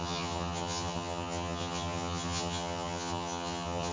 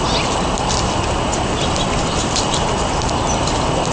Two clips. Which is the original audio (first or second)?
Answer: second